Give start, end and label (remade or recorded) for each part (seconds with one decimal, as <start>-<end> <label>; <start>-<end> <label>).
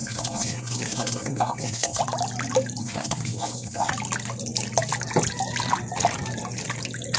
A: 0.0-2.0 remade; 2.0-2.8 recorded; 2.8-3.9 remade; 3.9-7.2 recorded